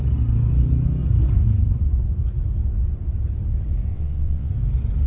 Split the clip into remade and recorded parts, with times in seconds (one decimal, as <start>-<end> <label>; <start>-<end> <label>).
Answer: 0.0-3.9 recorded; 3.9-4.5 remade; 4.5-5.1 recorded